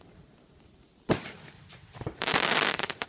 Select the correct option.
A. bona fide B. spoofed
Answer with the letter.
B